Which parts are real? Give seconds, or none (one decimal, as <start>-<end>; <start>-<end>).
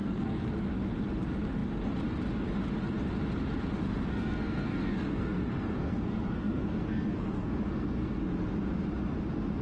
0.5-3.8; 8.2-9.6